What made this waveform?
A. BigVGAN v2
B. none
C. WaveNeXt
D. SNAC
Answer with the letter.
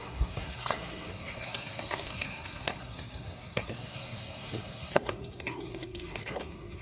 D